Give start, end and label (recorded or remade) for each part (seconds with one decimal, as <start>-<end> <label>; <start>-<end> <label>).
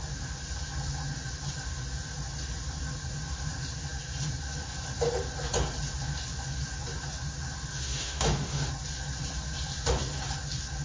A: 0.0-7.7 recorded; 7.7-8.7 remade; 8.7-10.8 recorded